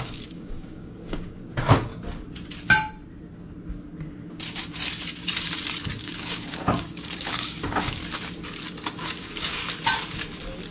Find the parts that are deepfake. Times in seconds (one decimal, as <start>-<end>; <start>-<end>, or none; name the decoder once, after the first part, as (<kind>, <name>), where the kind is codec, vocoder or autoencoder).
0.0-1.9 (codec, DAC); 6.0-8.0; 9.0-9.6